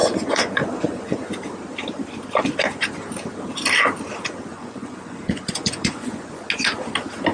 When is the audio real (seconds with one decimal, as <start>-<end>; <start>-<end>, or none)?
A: 1.3-4.5; 6.5-7.3